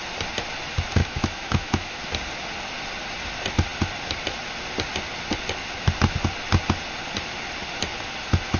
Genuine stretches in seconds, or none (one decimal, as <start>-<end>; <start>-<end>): 0.0-1.0; 2.0-8.6